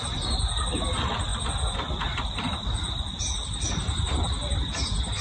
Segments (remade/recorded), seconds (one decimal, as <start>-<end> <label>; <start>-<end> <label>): 0.0-5.2 recorded